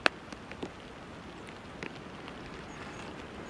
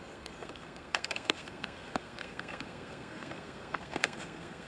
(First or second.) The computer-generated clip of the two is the second